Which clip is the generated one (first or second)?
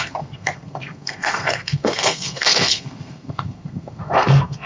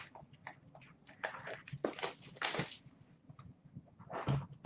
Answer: first